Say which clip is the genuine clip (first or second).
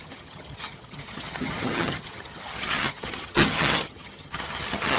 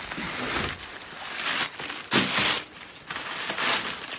second